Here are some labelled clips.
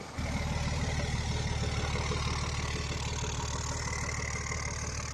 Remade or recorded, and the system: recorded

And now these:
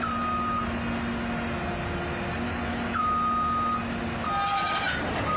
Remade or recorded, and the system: recorded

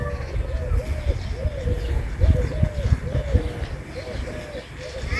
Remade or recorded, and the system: recorded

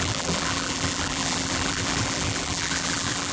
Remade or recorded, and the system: remade, vocoder, BigVGAN v2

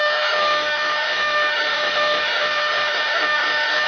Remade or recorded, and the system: remade, autoencoder, DAC-VAE